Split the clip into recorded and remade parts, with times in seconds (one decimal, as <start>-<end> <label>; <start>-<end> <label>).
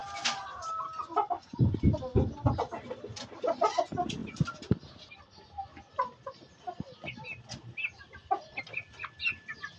0.0-9.8 recorded